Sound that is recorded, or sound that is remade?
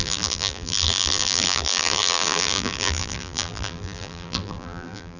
remade